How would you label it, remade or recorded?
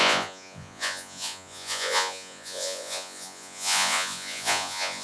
remade